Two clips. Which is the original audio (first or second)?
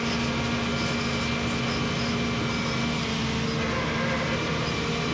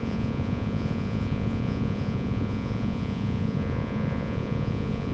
first